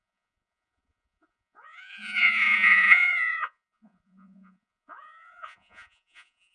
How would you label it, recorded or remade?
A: remade